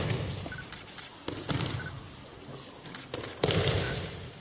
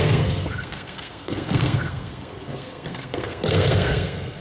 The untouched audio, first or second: first